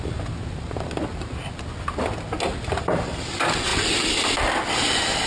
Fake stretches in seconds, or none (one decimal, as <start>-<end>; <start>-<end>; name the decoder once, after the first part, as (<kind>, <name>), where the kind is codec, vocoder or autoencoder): none